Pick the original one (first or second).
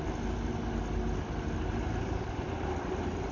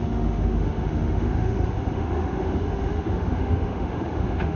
first